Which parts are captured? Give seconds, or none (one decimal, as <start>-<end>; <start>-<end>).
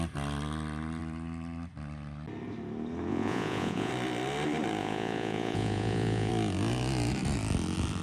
0.0-3.1; 3.9-4.8; 6.3-8.0